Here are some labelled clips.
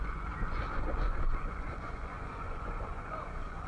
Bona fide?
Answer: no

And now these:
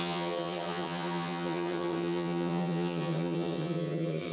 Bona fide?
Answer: no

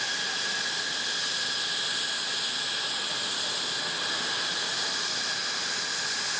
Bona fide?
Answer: yes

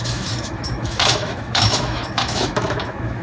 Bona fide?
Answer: no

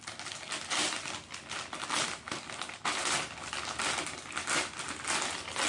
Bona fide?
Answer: yes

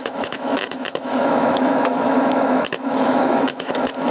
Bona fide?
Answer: no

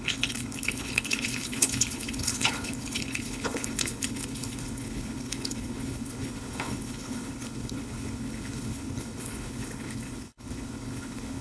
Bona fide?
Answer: no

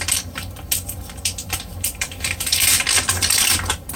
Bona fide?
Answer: no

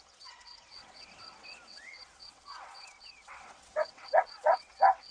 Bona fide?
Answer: no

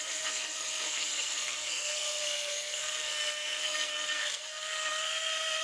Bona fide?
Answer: no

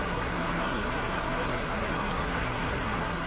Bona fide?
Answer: no